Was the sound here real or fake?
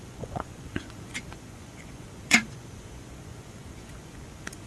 fake